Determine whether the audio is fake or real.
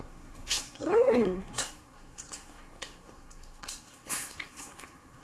fake